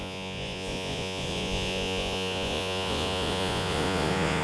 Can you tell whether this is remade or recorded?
remade